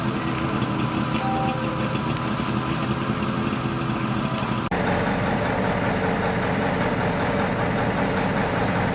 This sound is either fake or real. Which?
real